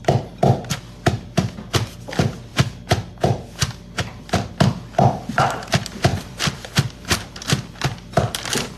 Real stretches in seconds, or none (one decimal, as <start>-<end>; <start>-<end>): 0.0-6.1